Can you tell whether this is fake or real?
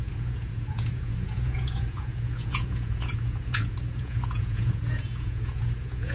fake